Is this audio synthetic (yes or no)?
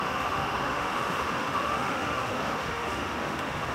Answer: yes